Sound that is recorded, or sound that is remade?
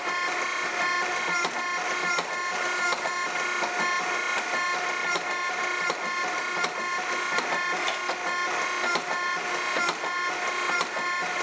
recorded